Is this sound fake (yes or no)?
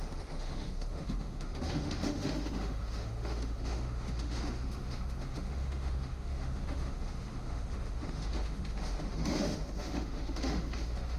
yes